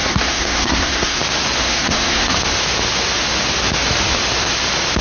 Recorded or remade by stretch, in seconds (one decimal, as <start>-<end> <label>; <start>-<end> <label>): 0.0-1.2 remade; 1.2-1.6 recorded; 1.6-2.4 remade; 2.4-5.0 recorded

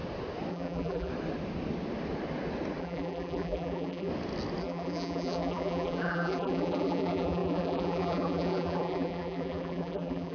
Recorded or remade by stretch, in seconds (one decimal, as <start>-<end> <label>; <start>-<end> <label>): 0.0-0.5 recorded; 0.5-1.1 remade; 1.1-2.8 recorded; 2.8-4.1 remade; 4.1-4.6 recorded; 4.6-10.3 remade

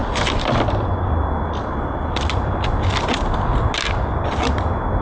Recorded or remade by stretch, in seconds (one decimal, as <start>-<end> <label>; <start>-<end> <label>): 0.0-3.0 remade; 3.0-5.0 recorded